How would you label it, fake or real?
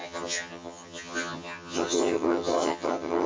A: fake